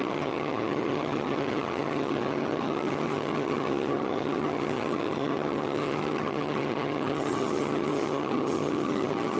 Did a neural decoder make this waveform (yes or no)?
yes